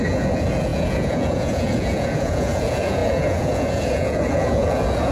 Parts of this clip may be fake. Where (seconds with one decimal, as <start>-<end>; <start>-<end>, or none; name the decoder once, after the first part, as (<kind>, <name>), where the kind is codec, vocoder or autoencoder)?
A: 0.0-5.1 (vocoder, Vocos)